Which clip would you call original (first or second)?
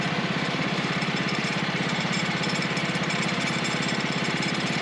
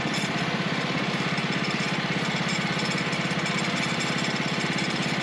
second